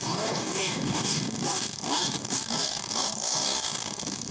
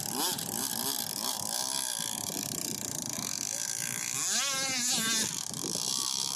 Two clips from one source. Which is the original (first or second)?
second